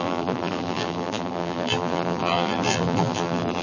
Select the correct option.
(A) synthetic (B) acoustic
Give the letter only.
A